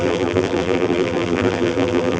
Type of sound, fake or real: fake